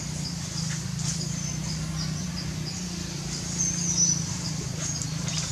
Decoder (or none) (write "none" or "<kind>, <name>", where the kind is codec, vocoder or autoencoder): none